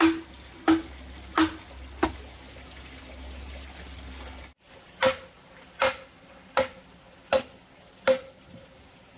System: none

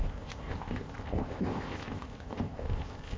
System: codec, ZipCodec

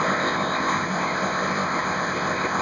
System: codec, ZipCodec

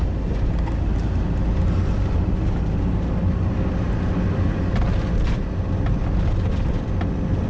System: none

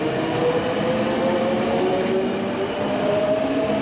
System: none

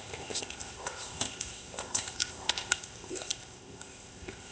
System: codec, ZipCodec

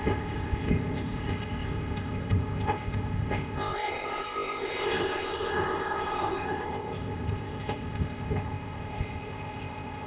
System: codec, ZipCodec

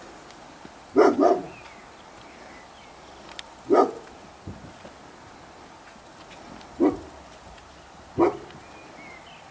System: none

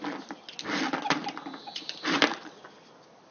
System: none